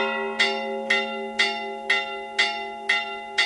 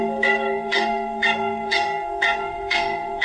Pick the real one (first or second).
first